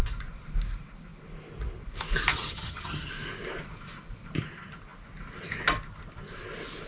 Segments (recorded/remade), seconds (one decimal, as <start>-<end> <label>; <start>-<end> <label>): 0.0-2.3 recorded; 2.3-3.1 remade; 3.1-6.9 recorded